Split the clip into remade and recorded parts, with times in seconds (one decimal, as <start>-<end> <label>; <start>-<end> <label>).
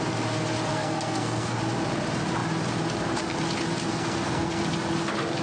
0.0-0.7 recorded; 0.7-1.6 remade; 1.6-3.9 recorded; 3.9-4.6 remade; 4.6-5.4 recorded